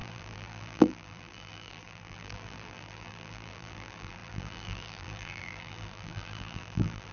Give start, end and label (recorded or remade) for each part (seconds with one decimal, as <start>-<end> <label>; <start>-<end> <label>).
0.0-7.1 remade